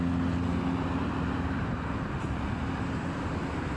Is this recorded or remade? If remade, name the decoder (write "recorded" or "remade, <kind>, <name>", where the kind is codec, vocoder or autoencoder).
recorded